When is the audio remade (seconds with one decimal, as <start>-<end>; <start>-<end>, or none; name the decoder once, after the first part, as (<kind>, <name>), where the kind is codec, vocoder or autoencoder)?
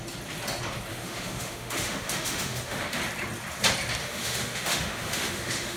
0.9-3.0 (autoencoder, DAC-VAE); 4.0-5.8